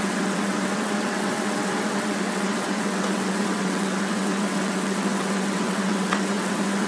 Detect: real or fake fake